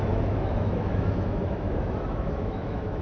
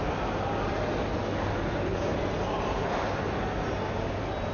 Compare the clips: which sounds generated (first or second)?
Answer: first